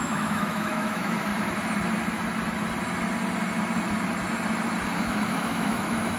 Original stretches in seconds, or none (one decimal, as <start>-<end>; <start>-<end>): 1.3-5.0